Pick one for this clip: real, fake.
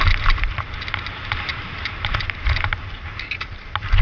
real